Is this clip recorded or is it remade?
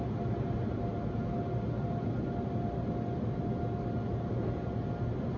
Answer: recorded